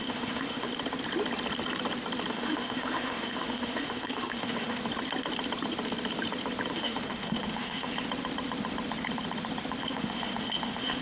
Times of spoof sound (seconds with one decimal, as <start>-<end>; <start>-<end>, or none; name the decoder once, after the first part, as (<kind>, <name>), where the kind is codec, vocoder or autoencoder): 0.0-0.7 (autoencoder, DAC-VAE); 2.3-4.8; 6.7-7.9; 9.8-11.0